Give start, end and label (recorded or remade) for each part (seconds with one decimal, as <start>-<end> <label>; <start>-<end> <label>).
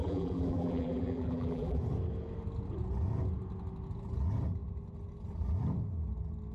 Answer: 0.0-1.8 remade; 1.8-6.5 recorded